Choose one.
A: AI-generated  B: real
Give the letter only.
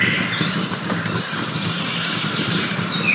A